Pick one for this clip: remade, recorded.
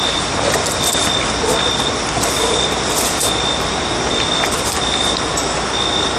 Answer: recorded